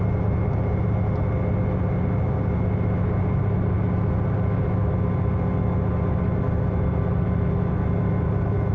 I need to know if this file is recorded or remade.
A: recorded